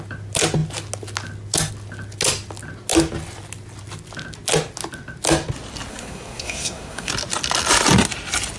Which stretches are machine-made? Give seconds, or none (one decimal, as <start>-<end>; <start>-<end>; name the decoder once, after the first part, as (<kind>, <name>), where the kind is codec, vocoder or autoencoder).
5.9-7.1 (codec, SNAC)